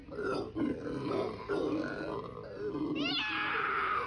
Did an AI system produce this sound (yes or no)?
no